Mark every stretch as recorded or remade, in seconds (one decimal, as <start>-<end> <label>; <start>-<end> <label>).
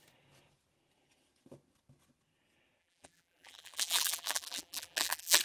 0.0-2.8 recorded; 2.8-5.4 remade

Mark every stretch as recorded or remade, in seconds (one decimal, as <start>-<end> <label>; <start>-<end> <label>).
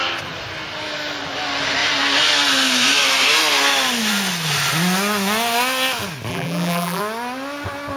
0.0-6.3 recorded; 6.3-7.0 remade; 7.0-8.0 recorded